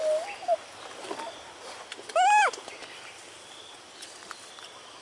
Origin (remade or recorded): recorded